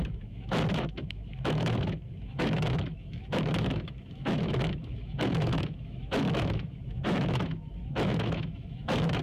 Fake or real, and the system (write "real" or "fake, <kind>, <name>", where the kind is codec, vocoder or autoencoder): fake, autoencoder, DAC-VAE